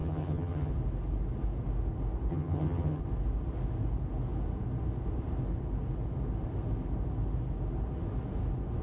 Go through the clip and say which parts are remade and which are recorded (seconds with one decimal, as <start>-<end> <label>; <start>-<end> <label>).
0.0-0.7 remade; 0.7-2.3 recorded; 2.3-3.0 remade; 3.0-8.8 recorded